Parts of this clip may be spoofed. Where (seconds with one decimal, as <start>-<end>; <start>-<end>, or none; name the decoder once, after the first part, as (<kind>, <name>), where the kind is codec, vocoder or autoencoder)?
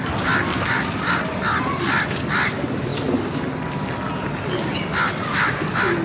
none